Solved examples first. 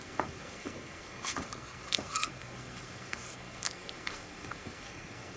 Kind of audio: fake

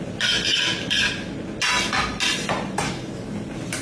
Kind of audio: real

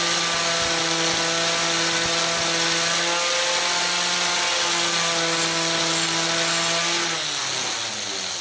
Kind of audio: real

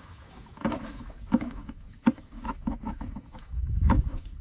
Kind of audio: fake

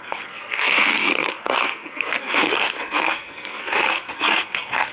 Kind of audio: fake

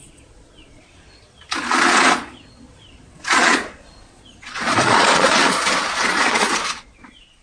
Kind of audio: fake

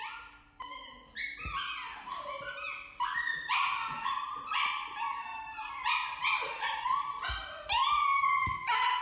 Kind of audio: real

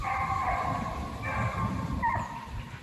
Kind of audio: real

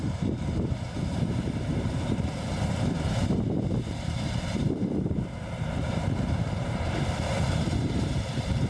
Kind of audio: fake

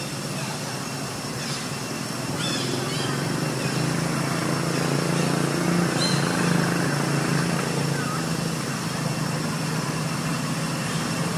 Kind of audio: real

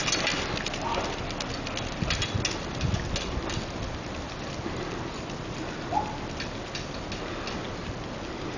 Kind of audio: real